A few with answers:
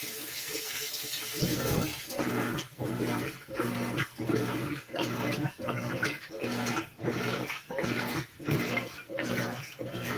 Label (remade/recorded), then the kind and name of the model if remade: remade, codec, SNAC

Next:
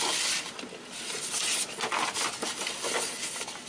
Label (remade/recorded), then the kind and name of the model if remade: recorded